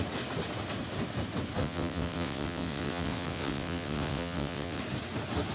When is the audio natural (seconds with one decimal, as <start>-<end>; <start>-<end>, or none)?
0.0-1.6; 4.8-5.5